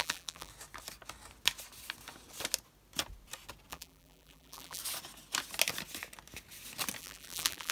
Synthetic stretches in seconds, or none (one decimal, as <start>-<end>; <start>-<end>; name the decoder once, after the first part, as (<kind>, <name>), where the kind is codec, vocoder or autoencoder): 0.0-0.5 (vocoder, BigVGAN v2); 3.7-4.8; 7.0-7.7